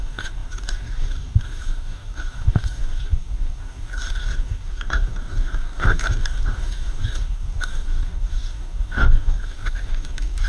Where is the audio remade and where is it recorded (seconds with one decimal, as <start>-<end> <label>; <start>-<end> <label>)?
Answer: 0.0-10.5 remade